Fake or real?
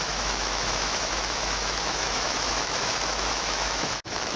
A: fake